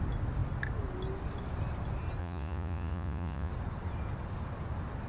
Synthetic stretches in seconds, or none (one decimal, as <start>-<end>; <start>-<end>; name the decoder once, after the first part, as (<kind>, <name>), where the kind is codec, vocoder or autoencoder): 2.2-3.5 (vocoder, Vocos)